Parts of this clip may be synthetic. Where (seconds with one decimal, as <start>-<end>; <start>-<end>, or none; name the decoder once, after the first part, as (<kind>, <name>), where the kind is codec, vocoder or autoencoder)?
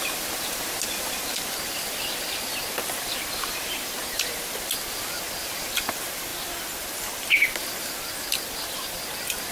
none